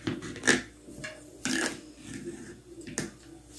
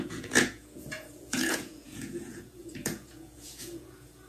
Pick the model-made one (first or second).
second